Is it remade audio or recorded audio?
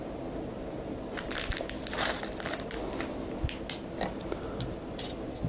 recorded